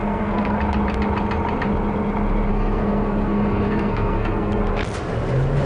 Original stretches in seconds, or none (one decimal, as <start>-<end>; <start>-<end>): 0.6-2.5; 4.6-5.7